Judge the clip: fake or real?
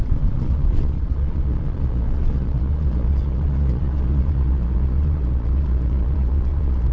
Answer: fake